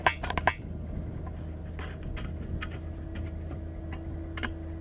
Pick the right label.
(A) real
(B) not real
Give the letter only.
A